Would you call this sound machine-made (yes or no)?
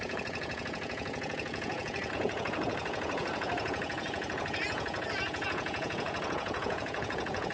yes